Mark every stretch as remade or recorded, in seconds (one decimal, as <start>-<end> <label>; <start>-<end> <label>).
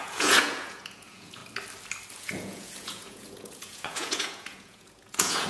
0.0-1.4 remade; 1.4-2.2 recorded; 2.2-5.5 remade